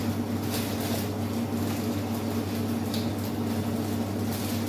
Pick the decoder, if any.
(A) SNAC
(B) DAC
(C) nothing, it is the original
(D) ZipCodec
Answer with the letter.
C